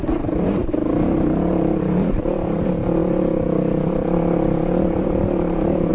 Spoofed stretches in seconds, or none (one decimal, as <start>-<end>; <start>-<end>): 0.0-0.6; 1.8-5.9